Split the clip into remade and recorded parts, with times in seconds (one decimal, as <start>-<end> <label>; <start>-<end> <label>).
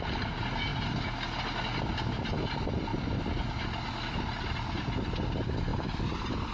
0.0-6.5 recorded